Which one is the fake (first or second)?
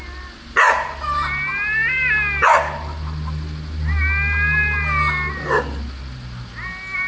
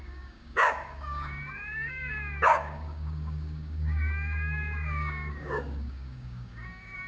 second